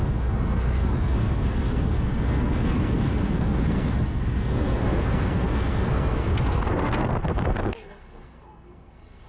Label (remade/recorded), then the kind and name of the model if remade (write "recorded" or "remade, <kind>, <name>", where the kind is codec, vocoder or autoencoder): remade, codec, SNAC